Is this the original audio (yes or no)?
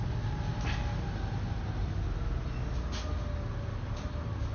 yes